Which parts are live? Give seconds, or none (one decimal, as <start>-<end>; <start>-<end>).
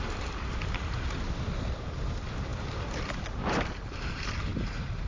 2.5-3.4